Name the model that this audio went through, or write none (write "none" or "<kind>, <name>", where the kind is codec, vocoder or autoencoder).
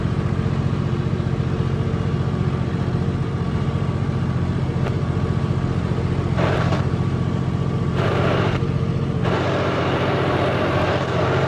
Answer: vocoder, BigVGAN v2